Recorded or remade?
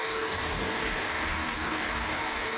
remade